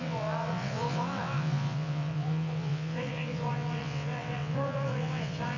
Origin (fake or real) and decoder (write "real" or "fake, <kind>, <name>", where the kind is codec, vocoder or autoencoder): fake, vocoder, WaveNeXt